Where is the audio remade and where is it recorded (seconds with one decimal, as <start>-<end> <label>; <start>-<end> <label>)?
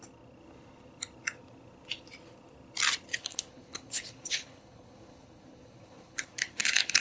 0.0-3.1 recorded; 3.1-7.0 remade